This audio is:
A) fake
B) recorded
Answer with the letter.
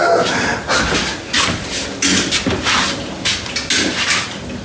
B